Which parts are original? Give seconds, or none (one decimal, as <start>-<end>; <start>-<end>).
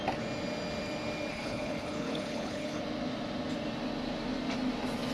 0.0-1.3; 2.8-5.1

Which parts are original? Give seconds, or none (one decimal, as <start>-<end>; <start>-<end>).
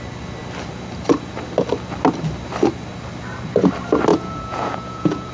0.0-4.1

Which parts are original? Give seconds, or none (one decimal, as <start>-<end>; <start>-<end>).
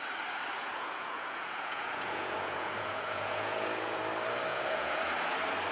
0.0-0.6; 4.0-4.5; 5.0-5.7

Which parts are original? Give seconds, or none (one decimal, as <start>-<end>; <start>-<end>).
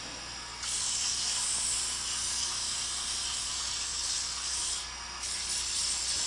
0.0-6.3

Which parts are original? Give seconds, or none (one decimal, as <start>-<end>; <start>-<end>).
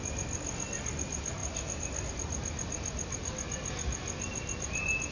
0.0-5.1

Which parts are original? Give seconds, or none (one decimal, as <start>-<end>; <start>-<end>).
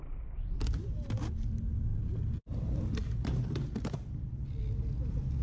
0.0-5.4